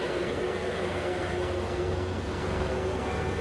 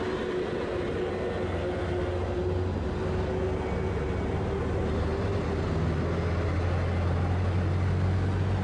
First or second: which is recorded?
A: second